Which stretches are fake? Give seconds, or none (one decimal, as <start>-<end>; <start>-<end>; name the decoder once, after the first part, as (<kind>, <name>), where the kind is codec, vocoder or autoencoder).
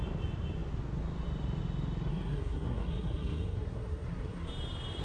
2.1-4.5 (codec, SNAC)